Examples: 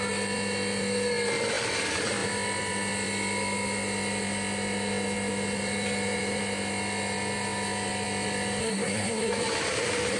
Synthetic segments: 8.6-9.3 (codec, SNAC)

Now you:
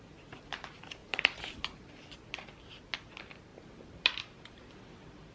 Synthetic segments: 1.0-1.9 (vocoder, BigVGAN v2)

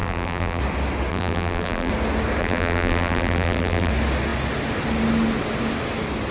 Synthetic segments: 0.0-0.6 (vocoder, BigVGAN v2); 1.1-1.9; 2.4-3.9

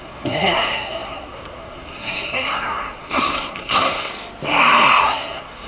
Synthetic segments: 0.0-4.1 (codec, SNAC); 5.0-5.7

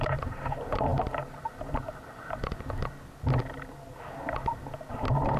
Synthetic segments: 0.0-2.8 (vocoder, BigVGAN v2)